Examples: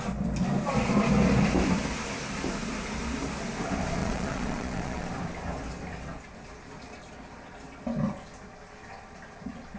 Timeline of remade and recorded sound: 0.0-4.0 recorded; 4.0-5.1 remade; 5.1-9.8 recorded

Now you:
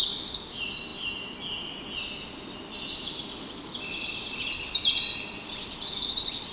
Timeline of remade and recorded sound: 0.0-6.5 recorded

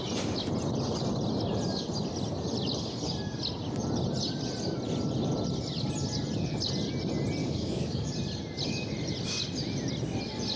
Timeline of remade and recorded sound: 0.0-7.4 recorded; 7.4-8.1 remade; 8.1-10.6 recorded

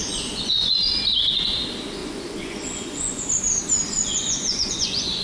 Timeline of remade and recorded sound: 0.0-0.9 remade; 0.9-2.0 recorded; 2.0-3.2 remade; 3.2-4.0 recorded; 4.0-5.2 remade

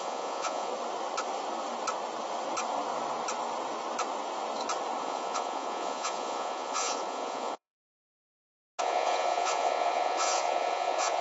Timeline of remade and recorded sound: 0.0-0.7 remade; 0.7-5.0 recorded; 5.0-7.9 remade; 7.9-8.8 recorded; 8.8-11.2 remade

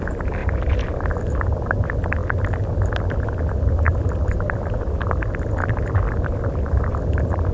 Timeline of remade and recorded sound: 0.0-7.5 recorded

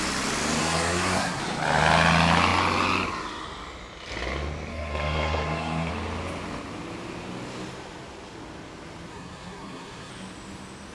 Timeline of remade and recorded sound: 0.0-0.6 recorded; 0.6-1.4 remade; 1.4-4.7 recorded; 4.7-5.9 remade; 5.9-9.1 recorded; 9.1-10.1 remade; 10.1-10.9 recorded